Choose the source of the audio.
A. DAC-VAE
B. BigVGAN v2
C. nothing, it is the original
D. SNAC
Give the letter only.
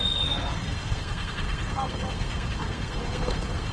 D